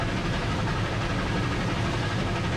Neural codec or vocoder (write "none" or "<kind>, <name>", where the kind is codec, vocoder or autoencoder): none